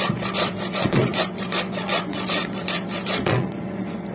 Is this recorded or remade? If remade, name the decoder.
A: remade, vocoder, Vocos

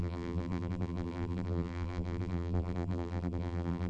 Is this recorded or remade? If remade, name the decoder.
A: remade, vocoder, BigVGAN v2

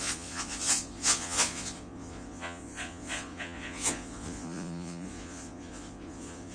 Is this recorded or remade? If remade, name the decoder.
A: remade, vocoder, Vocos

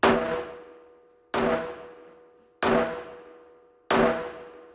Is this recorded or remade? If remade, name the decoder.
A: recorded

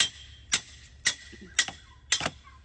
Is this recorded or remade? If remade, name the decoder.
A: recorded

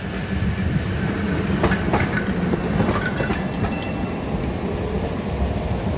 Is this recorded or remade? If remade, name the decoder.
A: recorded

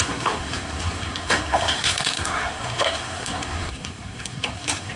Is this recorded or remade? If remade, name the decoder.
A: remade, codec, SNAC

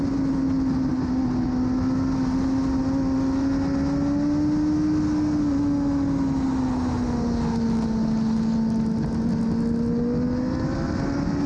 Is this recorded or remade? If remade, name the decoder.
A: recorded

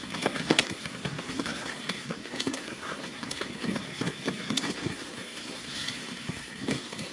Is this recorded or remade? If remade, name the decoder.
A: remade, codec, SNAC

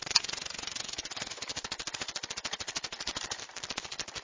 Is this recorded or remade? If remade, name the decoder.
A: recorded